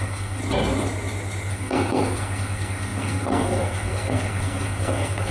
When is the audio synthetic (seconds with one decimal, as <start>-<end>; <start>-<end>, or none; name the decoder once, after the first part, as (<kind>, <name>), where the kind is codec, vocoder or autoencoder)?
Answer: 0.0-0.4 (codec, SNAC); 1.5-5.3